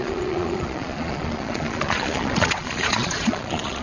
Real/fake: fake